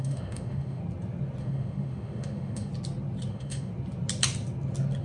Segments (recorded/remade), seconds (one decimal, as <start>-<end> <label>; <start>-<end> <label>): 0.0-0.8 remade; 0.8-1.4 recorded; 1.4-2.7 remade; 2.7-3.3 recorded; 3.3-3.7 remade; 3.7-5.0 recorded